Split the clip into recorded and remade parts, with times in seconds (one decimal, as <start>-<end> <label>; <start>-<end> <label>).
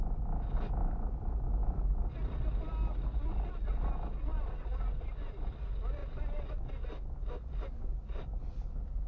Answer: 0.0-4.3 recorded; 4.3-5.5 remade; 5.5-9.1 recorded